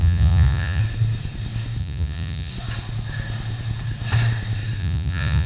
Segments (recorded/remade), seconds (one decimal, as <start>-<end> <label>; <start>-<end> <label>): 0.0-0.8 remade; 0.8-1.8 recorded; 1.8-2.5 remade; 2.5-4.8 recorded; 4.8-5.5 remade